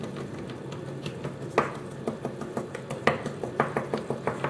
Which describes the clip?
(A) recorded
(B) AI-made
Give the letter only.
A